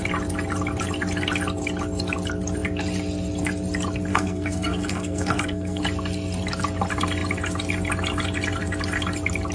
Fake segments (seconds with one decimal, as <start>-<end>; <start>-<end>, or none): 4.1-5.8